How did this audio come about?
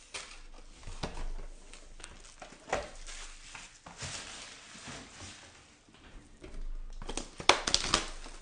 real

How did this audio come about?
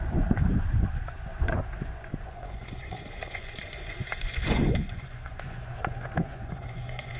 fake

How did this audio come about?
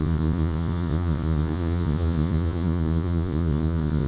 fake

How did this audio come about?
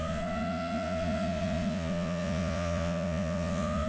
fake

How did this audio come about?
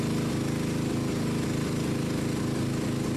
real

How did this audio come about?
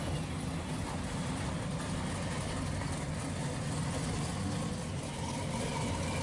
real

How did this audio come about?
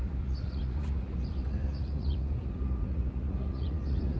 fake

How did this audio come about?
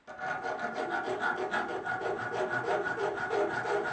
real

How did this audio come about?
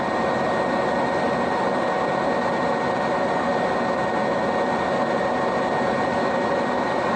real